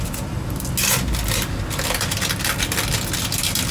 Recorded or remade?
recorded